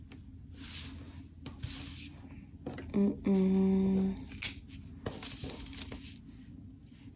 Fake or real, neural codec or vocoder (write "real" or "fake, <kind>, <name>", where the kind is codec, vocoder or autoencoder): real